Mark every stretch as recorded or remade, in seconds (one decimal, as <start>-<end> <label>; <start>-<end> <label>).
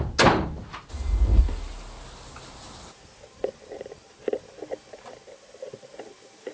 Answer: 0.0-6.5 recorded